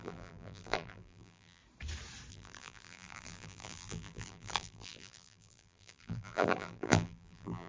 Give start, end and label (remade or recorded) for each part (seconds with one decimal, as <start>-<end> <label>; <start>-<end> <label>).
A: 0.0-1.6 remade; 1.6-2.3 recorded; 2.3-7.7 remade